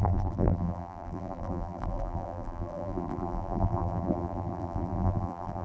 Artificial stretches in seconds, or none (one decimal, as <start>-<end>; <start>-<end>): 0.0-5.6